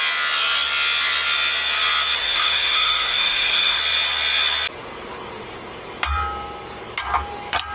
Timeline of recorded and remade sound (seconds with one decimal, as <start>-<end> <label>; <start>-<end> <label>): 0.0-2.2 recorded; 2.2-3.8 remade; 3.8-7.7 recorded